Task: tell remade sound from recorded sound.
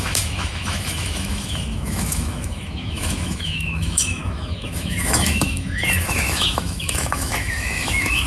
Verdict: remade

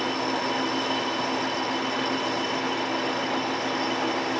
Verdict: recorded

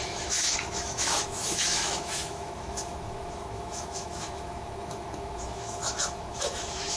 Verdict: remade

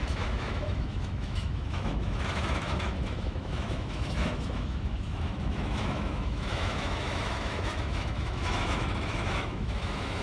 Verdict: remade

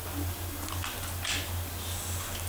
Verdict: recorded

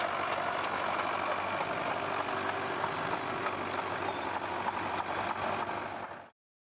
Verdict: recorded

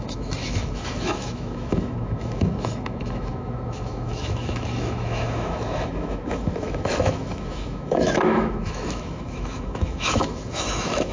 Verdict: remade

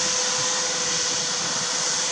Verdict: recorded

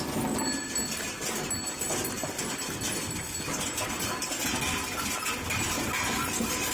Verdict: recorded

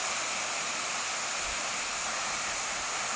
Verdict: recorded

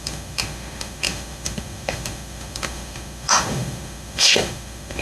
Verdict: remade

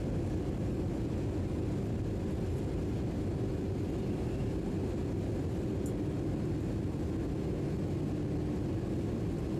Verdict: recorded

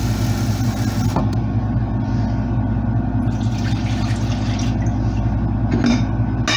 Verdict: recorded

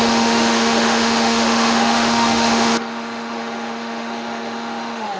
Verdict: remade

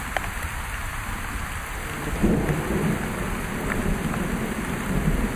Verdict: recorded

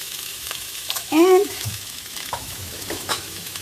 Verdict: remade